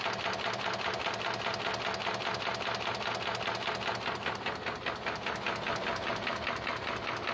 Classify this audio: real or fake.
real